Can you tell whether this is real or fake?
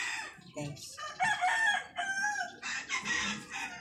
fake